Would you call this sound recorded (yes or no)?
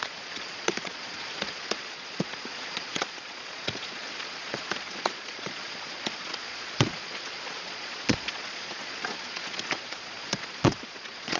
no